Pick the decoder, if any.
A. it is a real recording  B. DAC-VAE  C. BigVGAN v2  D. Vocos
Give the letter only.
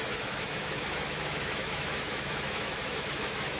B